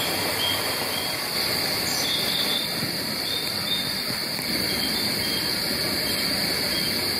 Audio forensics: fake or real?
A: real